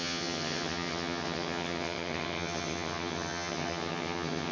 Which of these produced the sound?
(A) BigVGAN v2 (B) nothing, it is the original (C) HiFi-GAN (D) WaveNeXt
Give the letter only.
C